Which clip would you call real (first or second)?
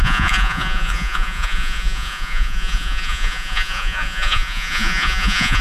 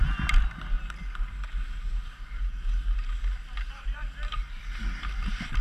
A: second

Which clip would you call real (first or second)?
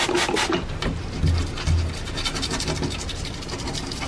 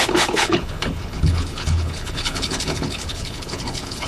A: first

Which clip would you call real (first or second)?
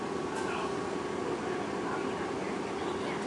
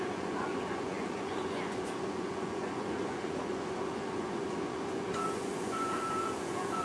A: first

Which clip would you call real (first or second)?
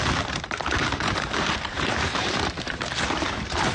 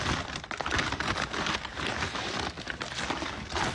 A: second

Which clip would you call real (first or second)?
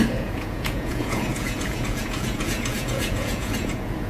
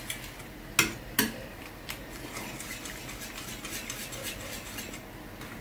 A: second